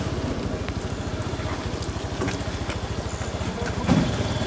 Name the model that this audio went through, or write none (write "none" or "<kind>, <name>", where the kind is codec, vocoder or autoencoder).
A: none